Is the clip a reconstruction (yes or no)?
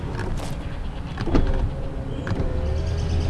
no